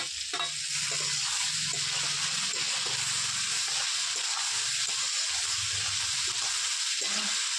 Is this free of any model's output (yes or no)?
yes